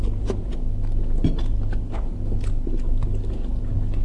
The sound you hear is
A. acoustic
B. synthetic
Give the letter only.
A